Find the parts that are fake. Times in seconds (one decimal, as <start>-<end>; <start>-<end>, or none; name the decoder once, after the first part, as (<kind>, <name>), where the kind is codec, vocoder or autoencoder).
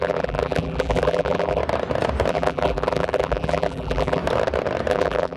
0.0-1.6 (vocoder, BigVGAN v2); 2.3-4.2; 4.9-5.4